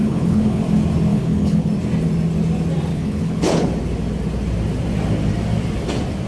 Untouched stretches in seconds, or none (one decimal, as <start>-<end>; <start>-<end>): 0.6-1.1; 1.7-2.9; 3.7-6.3